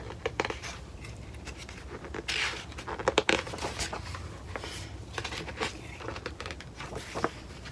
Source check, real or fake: fake